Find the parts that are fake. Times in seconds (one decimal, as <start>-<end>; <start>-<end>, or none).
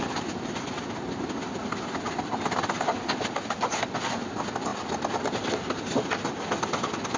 none